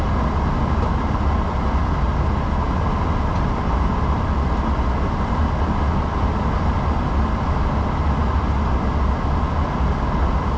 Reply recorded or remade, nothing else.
recorded